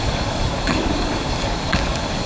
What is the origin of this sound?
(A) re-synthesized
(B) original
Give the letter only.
A